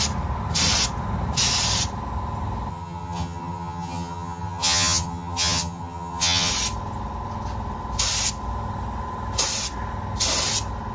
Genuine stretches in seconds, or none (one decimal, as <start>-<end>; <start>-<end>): 0.0-2.7; 6.5-10.9